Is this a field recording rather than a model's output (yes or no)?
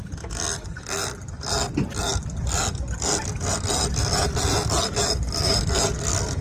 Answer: yes